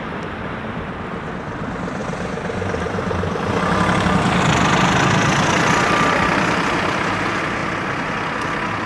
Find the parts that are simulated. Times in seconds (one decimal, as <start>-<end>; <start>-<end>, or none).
none